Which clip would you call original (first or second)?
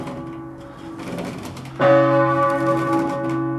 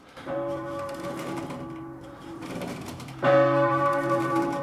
first